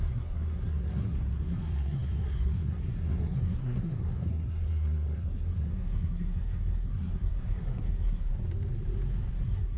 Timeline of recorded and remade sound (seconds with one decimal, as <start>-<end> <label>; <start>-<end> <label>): 0.0-8.3 remade; 8.3-9.3 recorded; 9.3-9.8 remade